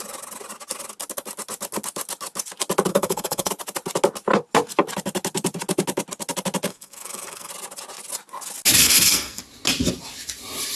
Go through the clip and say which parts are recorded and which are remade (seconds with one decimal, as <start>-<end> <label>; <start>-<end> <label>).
0.0-2.9 recorded; 2.9-3.5 remade; 3.5-6.7 recorded; 6.7-7.5 remade; 7.5-8.8 recorded; 8.8-9.4 remade; 9.4-10.8 recorded